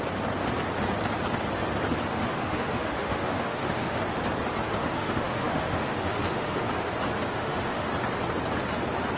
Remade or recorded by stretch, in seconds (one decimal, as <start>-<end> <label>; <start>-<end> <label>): 0.0-2.1 recorded; 2.1-4.0 remade; 4.0-4.8 recorded; 4.8-6.7 remade; 6.7-7.3 recorded; 7.3-7.9 remade; 7.9-9.2 recorded